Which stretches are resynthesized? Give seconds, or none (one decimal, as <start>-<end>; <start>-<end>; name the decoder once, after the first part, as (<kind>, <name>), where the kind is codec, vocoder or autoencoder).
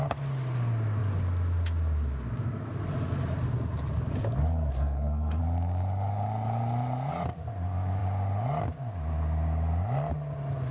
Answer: 4.7-5.4 (codec, SNAC)